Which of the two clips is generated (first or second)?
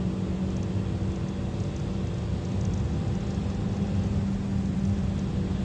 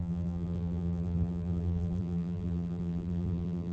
second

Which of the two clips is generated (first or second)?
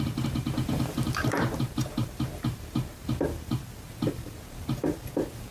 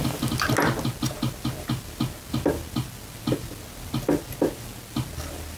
first